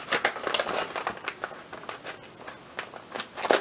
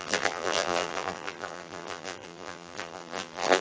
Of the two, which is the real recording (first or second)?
first